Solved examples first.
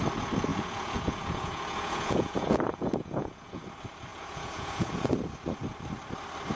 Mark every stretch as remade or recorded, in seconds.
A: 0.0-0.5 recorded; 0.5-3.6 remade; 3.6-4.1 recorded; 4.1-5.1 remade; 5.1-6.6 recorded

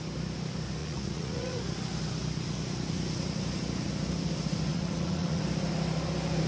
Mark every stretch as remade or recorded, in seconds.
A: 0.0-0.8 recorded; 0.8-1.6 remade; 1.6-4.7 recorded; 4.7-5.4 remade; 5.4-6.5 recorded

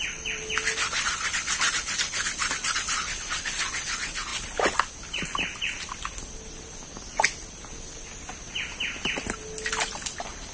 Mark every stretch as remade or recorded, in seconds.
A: 0.0-10.5 recorded

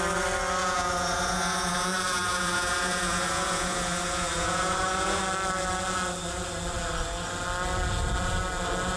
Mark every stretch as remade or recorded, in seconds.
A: 0.0-0.6 recorded; 0.6-5.2 remade; 5.2-9.0 recorded

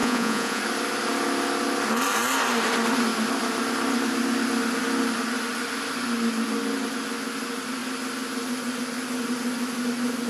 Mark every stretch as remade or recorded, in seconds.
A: 0.0-0.6 remade; 0.6-10.3 recorded

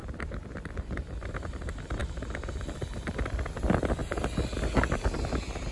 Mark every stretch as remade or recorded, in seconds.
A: 0.0-5.7 recorded